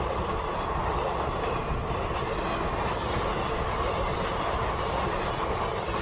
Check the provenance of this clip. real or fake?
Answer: real